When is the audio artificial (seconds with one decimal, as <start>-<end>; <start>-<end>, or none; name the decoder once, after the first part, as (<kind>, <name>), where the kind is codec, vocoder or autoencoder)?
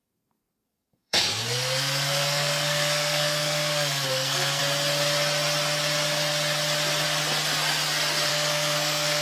0.0-4.6 (codec, SNAC); 8.3-9.2